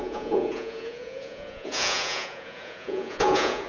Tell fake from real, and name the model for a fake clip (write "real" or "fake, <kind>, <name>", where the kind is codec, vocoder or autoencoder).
fake, vocoder, Vocos